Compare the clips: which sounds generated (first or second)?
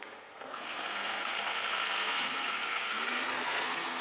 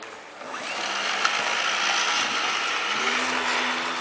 first